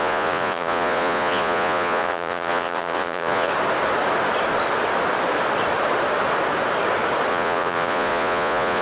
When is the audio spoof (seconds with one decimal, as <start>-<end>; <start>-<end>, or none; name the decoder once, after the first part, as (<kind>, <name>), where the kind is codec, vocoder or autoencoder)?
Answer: 0.0-3.5 (vocoder, Vocos); 7.3-8.8